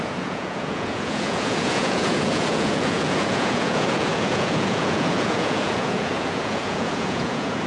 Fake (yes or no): yes